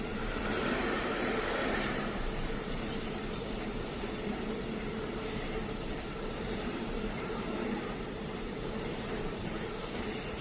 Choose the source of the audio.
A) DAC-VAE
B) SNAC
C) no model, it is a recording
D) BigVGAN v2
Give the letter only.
D